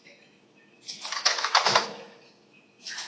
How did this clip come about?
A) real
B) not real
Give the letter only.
B